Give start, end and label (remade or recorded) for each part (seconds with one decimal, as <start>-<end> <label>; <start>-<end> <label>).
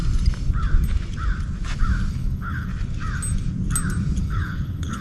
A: 0.0-2.1 recorded; 2.1-2.7 remade; 2.7-4.2 recorded; 4.2-5.0 remade